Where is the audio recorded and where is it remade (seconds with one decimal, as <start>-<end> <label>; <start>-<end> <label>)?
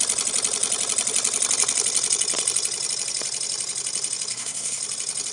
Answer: 0.0-4.3 recorded; 4.3-4.8 remade; 4.8-5.3 recorded